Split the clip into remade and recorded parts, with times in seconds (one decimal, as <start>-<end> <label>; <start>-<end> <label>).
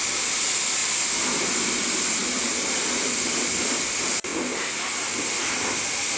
0.0-0.8 recorded; 0.8-1.3 remade; 1.3-2.2 recorded; 2.2-3.5 remade; 3.5-4.3 recorded; 4.3-5.1 remade; 5.1-6.2 recorded